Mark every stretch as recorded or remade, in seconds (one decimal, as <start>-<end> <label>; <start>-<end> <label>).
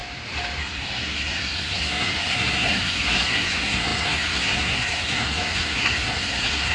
0.0-0.6 recorded; 0.6-6.7 remade